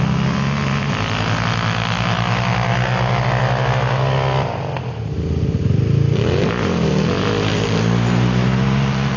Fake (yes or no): no